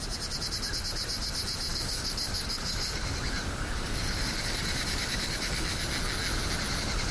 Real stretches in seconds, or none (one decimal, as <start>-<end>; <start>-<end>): 0.0-1.7; 5.8-7.1